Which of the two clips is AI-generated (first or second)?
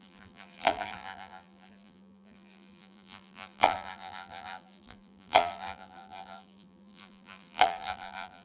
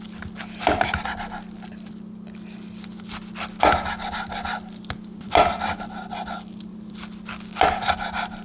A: first